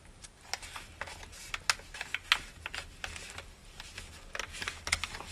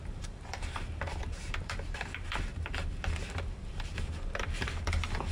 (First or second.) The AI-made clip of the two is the second